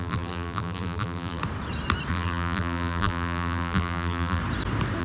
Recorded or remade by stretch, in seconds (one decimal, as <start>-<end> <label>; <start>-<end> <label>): 0.0-1.4 remade; 1.4-2.1 recorded; 2.1-4.4 remade; 4.4-5.0 recorded